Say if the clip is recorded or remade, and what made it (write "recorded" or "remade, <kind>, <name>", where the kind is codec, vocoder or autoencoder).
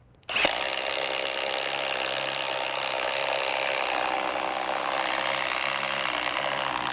recorded